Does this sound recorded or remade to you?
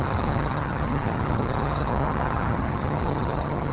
remade